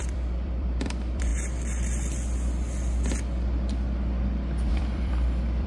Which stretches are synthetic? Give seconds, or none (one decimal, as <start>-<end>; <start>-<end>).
0.0-1.3; 4.7-5.7